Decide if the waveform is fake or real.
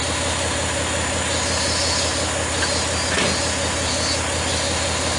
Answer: real